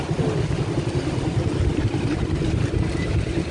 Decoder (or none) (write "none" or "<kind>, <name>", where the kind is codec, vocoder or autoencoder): none